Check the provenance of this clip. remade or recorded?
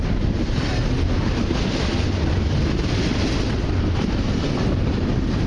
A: recorded